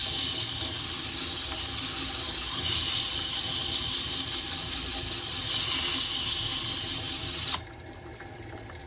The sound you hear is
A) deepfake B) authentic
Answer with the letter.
B